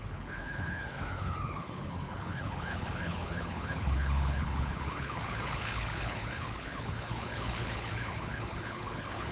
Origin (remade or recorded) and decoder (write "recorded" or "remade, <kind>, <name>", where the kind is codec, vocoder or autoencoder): remade, codec, HILCodec